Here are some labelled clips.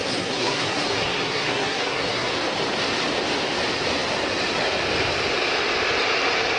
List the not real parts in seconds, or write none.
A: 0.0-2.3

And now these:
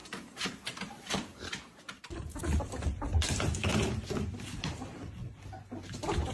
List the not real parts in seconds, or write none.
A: 0.0-3.7; 5.8-6.3